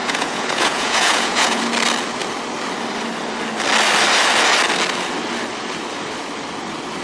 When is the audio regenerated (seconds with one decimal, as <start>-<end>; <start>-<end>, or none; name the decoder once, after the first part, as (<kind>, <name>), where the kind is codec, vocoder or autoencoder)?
0.0-1.6 (vocoder, Vocos)